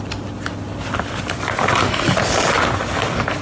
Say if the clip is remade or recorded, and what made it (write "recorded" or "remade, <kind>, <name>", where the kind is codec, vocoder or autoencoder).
recorded